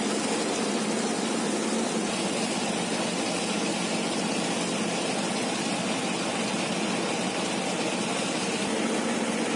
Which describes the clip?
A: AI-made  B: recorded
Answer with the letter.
B